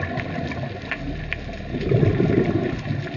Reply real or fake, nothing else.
real